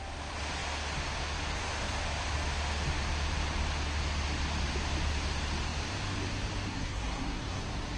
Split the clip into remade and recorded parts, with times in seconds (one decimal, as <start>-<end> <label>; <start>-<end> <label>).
0.0-6.7 recorded; 6.7-7.6 remade; 7.6-8.0 recorded